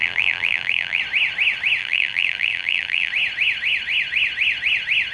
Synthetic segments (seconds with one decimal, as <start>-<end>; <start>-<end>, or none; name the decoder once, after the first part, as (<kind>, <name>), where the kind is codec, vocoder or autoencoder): 0.0-1.0 (vocoder, BigVGAN v2); 1.8-3.1